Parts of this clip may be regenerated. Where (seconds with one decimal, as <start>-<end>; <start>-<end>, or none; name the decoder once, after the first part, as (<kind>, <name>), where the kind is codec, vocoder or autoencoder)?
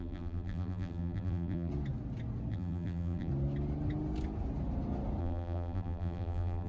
0.0-1.7 (vocoder, BigVGAN v2); 2.5-3.3; 5.2-6.7